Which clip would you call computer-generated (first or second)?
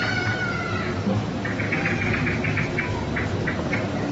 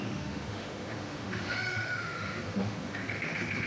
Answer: second